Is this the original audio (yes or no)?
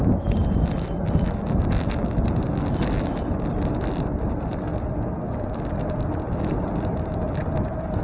yes